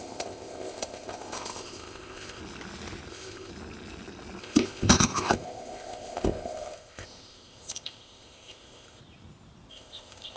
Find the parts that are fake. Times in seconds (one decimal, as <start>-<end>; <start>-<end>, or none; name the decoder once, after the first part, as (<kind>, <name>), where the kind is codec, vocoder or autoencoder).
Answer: 0.0-2.4 (codec, ZipCodec); 3.1-3.5; 4.4-9.0; 9.7-10.4